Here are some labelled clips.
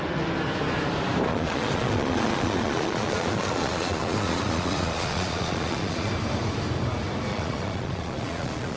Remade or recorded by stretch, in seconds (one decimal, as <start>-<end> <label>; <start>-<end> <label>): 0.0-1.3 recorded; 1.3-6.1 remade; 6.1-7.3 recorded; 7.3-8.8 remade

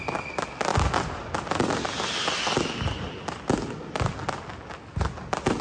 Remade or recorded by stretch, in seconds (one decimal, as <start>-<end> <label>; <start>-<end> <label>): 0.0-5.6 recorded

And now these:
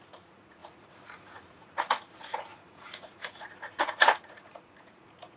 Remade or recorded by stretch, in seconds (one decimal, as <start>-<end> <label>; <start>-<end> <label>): 0.0-5.4 remade

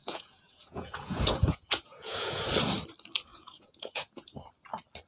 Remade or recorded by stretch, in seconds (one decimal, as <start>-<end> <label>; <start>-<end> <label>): 0.0-2.5 remade; 2.5-3.3 recorded; 3.3-4.5 remade; 4.5-5.1 recorded

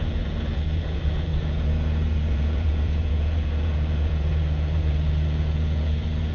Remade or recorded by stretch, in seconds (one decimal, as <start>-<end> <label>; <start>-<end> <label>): 0.0-6.3 remade

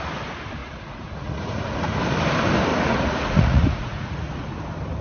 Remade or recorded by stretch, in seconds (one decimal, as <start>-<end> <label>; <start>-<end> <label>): 0.0-0.6 recorded; 0.6-2.0 remade; 2.0-2.7 recorded; 2.7-4.5 remade; 4.5-5.0 recorded

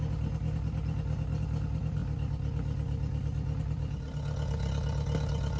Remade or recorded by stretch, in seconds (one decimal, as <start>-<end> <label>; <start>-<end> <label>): 0.0-5.6 recorded

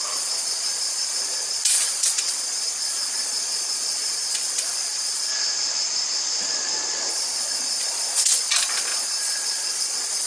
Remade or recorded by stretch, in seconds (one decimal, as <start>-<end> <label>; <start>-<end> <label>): 0.0-5.3 remade; 5.3-7.1 recorded; 7.1-10.3 remade